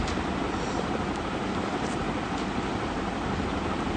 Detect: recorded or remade remade